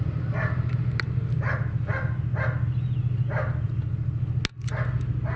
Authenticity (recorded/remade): recorded